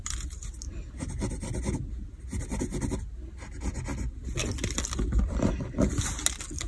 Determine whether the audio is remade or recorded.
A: recorded